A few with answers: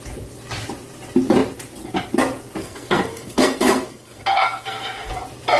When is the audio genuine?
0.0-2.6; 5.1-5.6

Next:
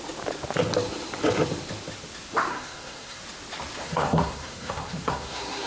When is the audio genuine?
0.0-2.5; 3.2-3.8

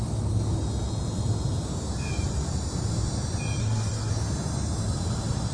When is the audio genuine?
0.0-3.6; 4.1-5.5

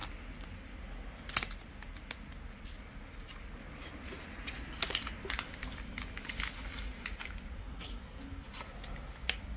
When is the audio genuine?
0.0-7.6; 8.2-9.6